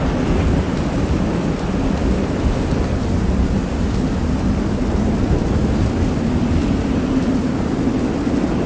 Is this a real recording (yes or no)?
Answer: yes